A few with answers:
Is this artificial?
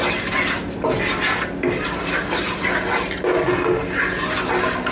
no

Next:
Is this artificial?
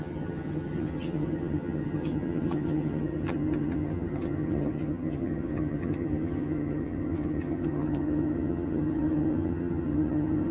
yes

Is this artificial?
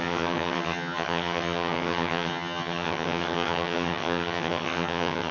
yes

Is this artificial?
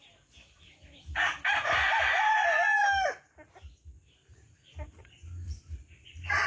no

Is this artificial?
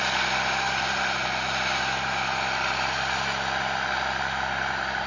no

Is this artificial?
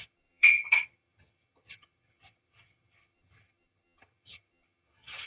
yes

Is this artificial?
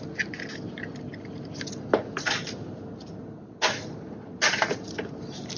no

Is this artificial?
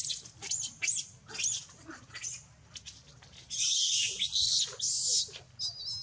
no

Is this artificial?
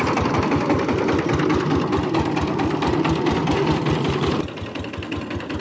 no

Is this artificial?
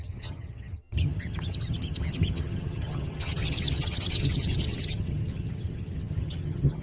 yes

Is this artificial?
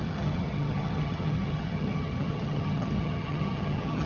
yes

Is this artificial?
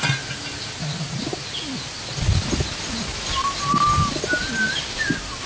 no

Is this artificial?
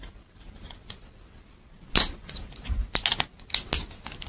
no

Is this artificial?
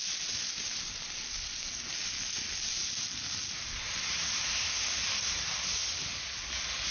no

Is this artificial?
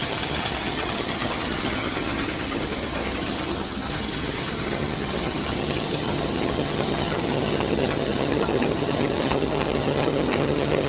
yes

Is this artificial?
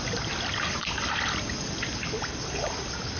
no